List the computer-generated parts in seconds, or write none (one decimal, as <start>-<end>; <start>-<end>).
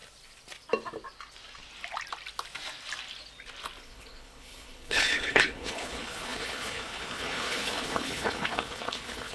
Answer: 3.8-9.3